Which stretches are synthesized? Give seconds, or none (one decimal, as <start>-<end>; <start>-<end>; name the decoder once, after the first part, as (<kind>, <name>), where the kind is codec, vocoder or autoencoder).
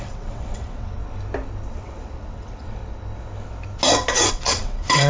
0.0-1.0 (vocoder, WaveNeXt); 1.7-2.8; 4.3-5.1